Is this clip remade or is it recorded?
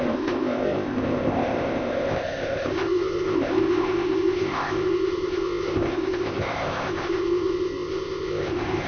remade